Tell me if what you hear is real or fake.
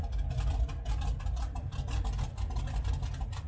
real